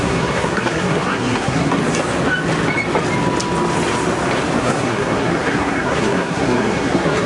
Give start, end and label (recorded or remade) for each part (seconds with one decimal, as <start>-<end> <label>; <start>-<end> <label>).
0.0-1.8 remade; 1.8-4.6 recorded; 4.6-7.3 remade